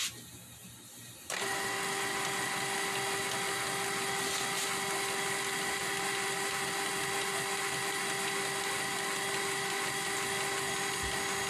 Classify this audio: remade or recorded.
recorded